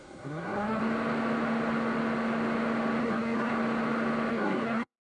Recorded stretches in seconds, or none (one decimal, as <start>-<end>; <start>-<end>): 0.8-3.0; 3.5-4.3